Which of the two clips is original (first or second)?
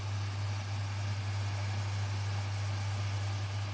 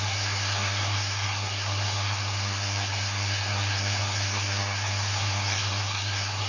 first